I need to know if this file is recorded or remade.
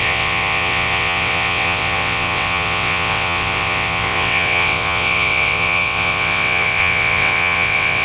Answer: remade